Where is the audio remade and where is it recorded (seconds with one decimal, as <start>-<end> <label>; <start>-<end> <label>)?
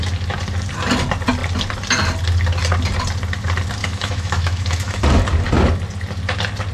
0.0-3.8 recorded; 3.8-5.0 remade; 5.0-6.7 recorded